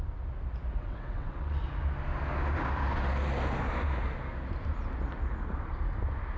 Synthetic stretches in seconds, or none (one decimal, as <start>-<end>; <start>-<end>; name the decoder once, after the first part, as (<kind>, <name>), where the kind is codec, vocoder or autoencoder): 0.8-1.6 (vocoder, WaveNeXt)